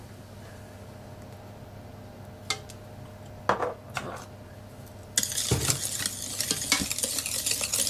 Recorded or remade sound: recorded